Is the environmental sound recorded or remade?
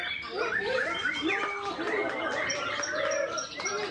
remade